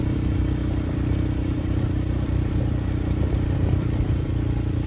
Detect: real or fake fake